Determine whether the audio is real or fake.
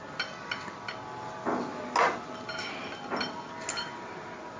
real